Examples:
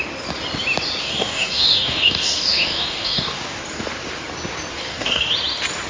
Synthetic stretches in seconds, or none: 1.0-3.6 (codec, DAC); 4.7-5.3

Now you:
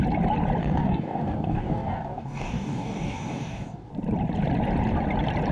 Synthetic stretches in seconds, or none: 0.6-3.9 (codec, DAC)

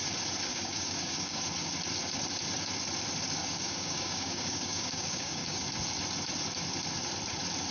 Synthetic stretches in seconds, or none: 0.5-1.4 (codec, DAC); 3.4-5.6

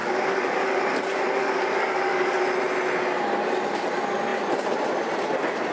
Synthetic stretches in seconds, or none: 0.0-0.8 (codec, DAC); 1.4-2.4

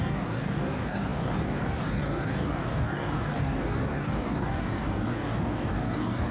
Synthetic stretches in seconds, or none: 0.0-6.3 (codec, DAC)

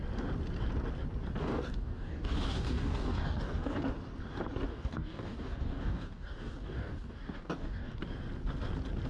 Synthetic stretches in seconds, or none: 1.4-3.8 (codec, DAC); 4.7-8.0

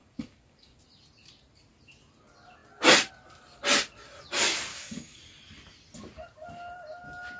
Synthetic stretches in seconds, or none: 0.0-0.8 (codec, DAC); 4.7-5.2

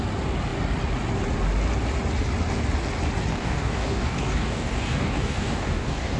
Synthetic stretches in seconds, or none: 3.3-6.2 (codec, DAC)